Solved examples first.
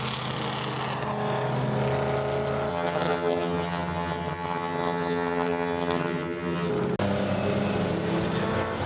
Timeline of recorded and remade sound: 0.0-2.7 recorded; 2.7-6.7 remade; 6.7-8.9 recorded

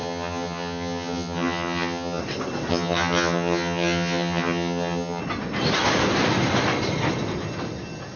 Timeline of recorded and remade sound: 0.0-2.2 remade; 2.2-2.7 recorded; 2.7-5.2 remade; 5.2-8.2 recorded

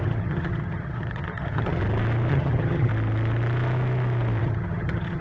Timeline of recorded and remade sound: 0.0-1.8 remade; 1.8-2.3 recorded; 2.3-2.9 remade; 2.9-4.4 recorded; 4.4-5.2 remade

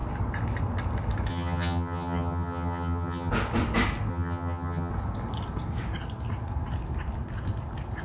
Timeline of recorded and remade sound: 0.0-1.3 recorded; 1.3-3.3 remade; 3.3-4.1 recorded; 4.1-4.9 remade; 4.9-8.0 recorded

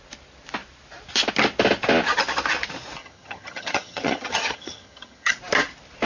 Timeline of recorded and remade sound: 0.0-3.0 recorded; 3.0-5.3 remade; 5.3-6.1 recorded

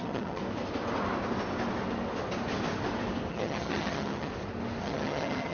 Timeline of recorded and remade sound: 0.0-0.4 remade; 0.4-3.3 recorded; 3.3-4.3 remade; 4.3-4.8 recorded; 4.8-5.5 remade